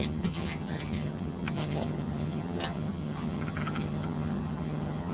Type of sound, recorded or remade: remade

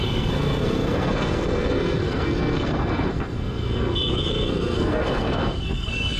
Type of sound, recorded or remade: remade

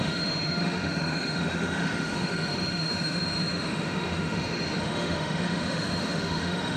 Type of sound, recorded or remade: remade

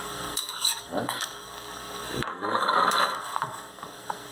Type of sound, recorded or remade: remade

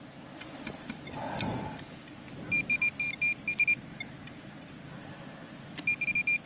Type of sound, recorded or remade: recorded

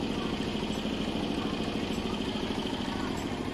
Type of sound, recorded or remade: recorded